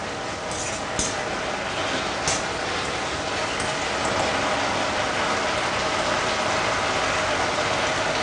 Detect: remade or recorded recorded